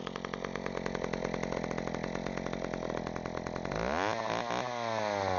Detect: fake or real real